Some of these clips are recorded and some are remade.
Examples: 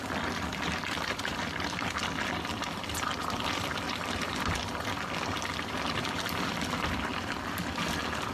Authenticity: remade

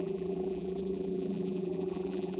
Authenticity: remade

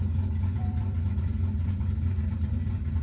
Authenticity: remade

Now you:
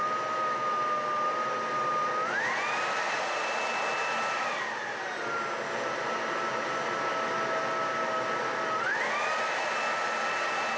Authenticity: recorded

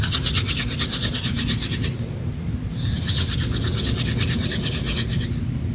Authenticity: recorded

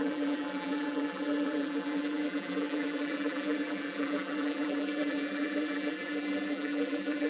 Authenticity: remade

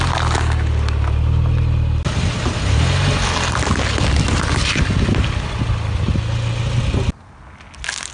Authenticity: recorded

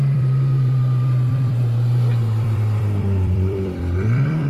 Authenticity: remade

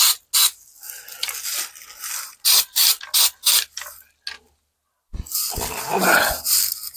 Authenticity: recorded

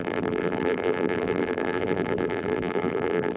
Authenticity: remade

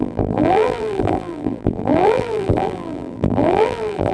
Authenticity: remade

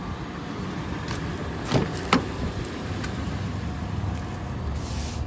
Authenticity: recorded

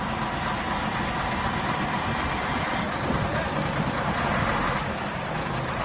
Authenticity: recorded